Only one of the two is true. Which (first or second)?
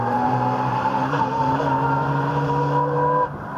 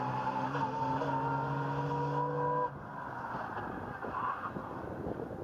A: second